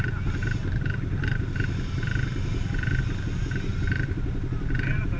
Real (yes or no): yes